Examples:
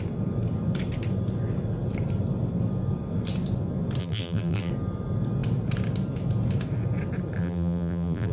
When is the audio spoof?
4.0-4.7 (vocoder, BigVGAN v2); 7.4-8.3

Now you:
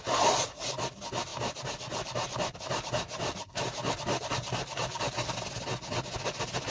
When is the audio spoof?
1.3-5.1 (vocoder, BigVGAN v2)

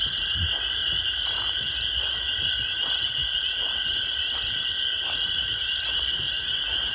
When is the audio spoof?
none

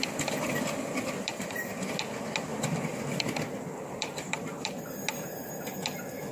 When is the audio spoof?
1.3-1.9 (vocoder, BigVGAN v2); 2.5-4.8

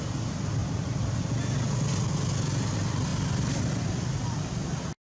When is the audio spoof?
0.6-1.3 (vocoder, BigVGAN v2); 3.1-3.8